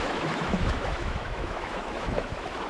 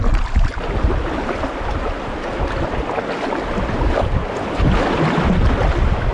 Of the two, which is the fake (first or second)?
first